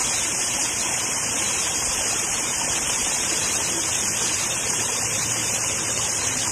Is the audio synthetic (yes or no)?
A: yes